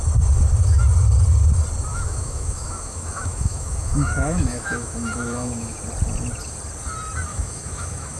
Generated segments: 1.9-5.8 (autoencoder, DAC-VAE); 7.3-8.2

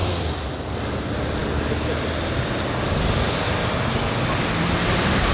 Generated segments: 0.0-0.5 (vocoder, BigVGAN v2)

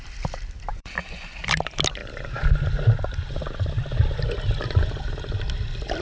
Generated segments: 0.7-1.4 (vocoder, Vocos)

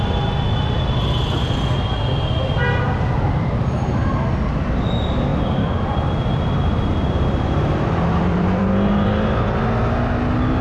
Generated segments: 5.3-9.6 (vocoder, BigVGAN v2)

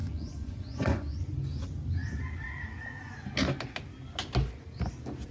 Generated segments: 0.0-1.2 (vocoder, Vocos)